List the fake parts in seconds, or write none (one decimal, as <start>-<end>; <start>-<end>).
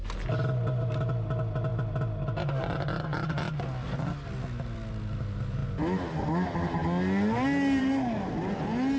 none